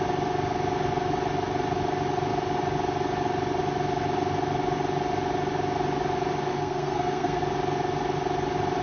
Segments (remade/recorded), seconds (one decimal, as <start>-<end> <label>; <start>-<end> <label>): 0.0-6.5 recorded; 6.5-7.4 remade; 7.4-8.8 recorded